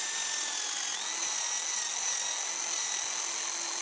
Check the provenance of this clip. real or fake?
real